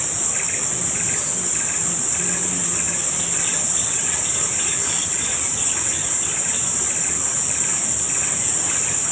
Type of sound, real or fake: real